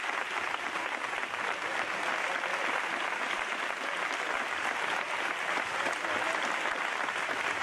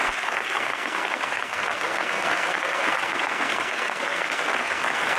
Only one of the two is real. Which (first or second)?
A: first